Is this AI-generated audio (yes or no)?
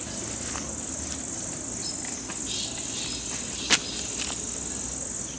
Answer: no